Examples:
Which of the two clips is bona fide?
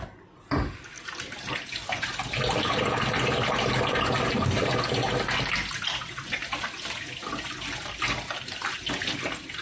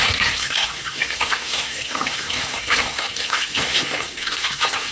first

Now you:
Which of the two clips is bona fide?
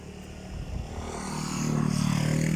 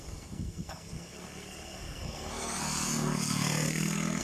first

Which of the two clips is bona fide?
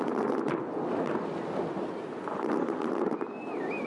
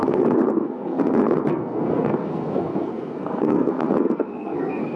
first